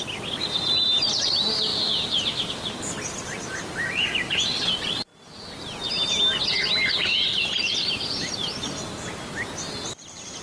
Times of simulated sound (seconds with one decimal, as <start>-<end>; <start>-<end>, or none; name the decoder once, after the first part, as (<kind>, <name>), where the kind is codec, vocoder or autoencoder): 0.0-10.4 (vocoder, BigVGAN v2)